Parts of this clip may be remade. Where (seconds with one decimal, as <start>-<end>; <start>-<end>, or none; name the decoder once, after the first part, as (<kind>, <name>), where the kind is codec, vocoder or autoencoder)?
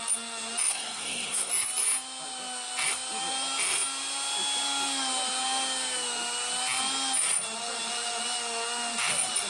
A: 0.7-1.5 (codec, SNAC)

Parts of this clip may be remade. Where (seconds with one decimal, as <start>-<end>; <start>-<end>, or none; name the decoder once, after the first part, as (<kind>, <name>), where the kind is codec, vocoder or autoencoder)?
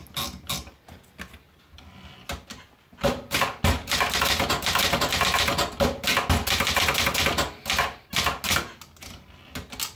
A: none